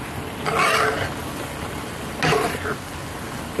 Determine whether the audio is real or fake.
real